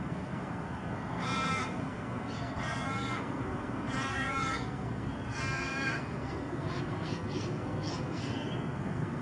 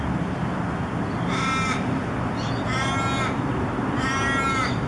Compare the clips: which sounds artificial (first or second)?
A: first